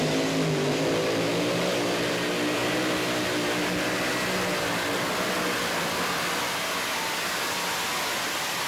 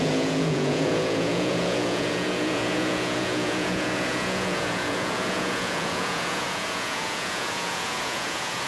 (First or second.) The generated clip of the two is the second